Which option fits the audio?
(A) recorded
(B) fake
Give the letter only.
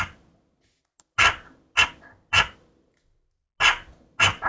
A